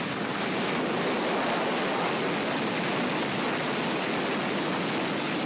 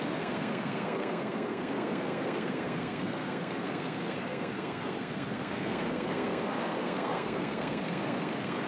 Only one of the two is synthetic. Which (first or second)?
second